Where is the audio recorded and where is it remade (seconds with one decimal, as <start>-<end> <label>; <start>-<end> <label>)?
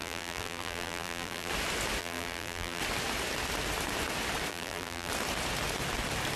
0.0-1.5 remade; 1.5-2.0 recorded; 2.0-2.8 remade; 2.8-4.5 recorded; 4.5-5.1 remade; 5.1-6.4 recorded